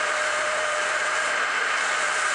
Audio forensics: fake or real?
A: fake